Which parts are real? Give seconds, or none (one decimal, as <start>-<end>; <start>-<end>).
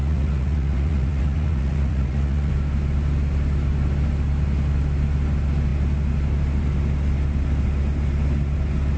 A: 2.5-9.0